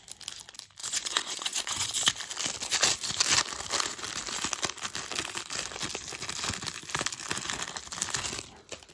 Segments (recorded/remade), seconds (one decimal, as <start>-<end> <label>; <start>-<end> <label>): 0.0-0.8 recorded; 0.8-1.9 remade; 1.9-8.9 recorded